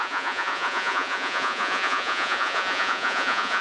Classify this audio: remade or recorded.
remade